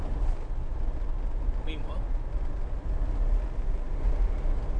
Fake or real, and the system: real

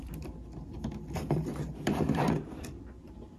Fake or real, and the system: fake, vocoder, BigVGAN v2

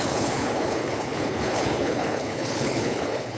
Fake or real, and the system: fake, codec, HILCodec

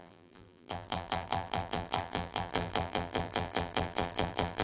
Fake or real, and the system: fake, vocoder, BigVGAN v2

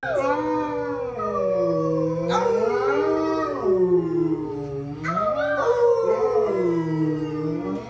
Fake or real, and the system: real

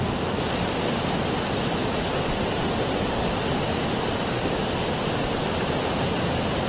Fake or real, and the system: real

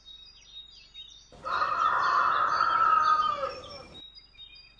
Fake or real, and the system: real